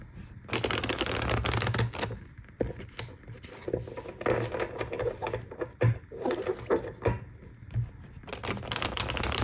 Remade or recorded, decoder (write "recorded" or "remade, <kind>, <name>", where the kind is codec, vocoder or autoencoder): recorded